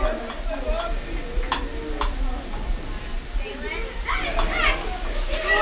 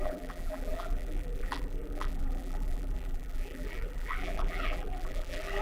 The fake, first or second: second